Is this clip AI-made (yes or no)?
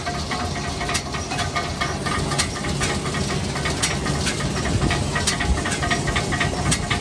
no